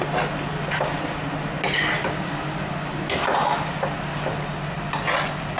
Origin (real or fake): real